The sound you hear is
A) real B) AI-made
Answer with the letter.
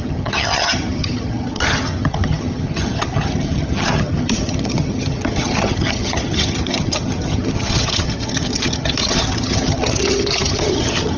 B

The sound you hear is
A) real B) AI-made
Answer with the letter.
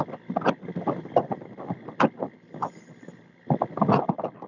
A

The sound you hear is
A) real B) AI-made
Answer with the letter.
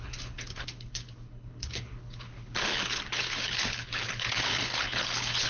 B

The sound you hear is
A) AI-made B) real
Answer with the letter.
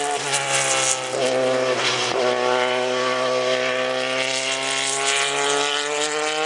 B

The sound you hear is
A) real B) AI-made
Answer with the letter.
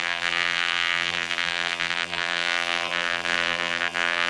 B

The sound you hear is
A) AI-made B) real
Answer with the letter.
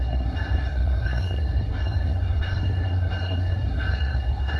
A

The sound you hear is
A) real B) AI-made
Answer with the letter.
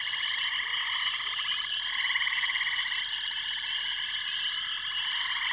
A